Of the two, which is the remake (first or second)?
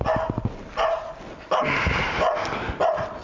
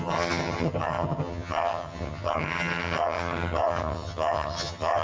second